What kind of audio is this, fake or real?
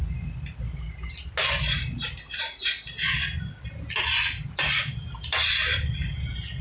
real